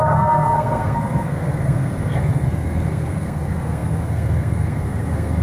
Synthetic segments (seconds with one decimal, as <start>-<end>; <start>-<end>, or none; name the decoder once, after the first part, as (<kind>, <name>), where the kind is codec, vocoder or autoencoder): 0.0-5.4 (codec, SNAC)